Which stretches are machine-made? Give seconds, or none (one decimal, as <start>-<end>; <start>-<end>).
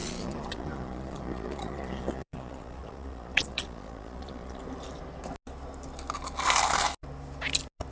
0.0-4.6